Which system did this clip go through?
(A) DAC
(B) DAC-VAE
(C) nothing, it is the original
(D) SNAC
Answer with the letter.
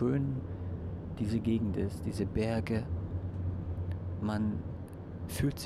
C